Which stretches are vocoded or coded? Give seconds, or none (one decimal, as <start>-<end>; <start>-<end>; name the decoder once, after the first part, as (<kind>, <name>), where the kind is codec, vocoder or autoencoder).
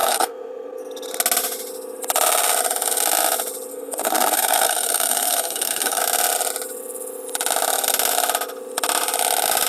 0.0-0.8 (codec, SNAC); 3.7-6.0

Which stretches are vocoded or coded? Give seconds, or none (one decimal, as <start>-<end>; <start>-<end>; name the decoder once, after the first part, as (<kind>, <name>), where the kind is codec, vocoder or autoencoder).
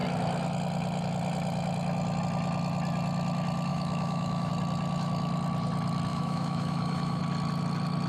3.7-4.5 (autoencoder, DAC-VAE); 6.1-7.2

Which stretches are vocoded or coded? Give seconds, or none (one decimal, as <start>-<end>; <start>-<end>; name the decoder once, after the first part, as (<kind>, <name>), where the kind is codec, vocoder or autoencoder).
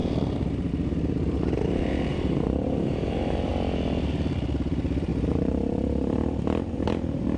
2.1-3.5 (vocoder, BigVGAN v2); 5.1-7.4